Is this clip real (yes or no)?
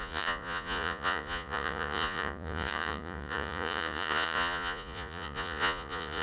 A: no